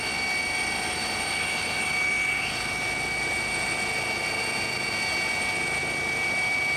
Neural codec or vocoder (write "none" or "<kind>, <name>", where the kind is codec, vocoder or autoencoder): none